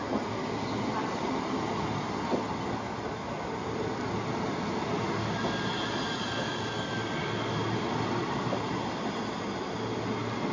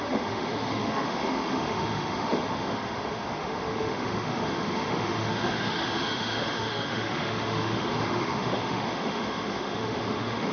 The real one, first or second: first